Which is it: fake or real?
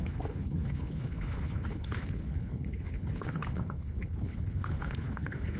fake